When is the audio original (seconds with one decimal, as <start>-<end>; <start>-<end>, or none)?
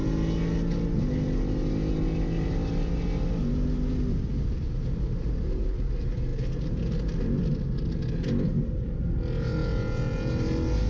0.0-9.6; 10.3-10.9